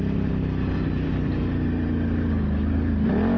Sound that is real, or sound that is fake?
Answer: real